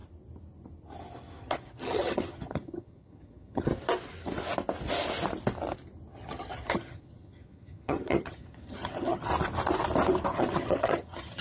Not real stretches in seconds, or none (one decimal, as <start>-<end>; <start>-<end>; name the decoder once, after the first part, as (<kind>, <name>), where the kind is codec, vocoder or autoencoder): 1.4-3.7 (vocoder, HiFi-GAN); 6.1-9.3; 10.4-11.4